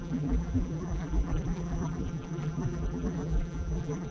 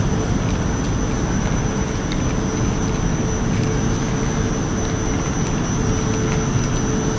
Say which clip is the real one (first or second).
second